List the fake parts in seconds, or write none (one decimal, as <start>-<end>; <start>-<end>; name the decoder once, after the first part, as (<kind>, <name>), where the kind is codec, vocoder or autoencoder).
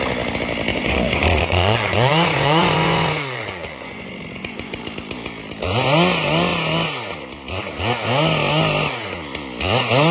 0.7-4.8 (vocoder, Vocos)